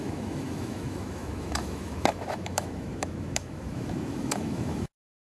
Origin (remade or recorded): remade